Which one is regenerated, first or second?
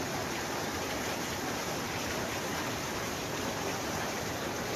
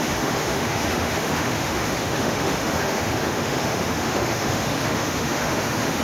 second